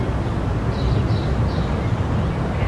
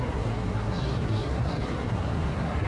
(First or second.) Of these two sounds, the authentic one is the first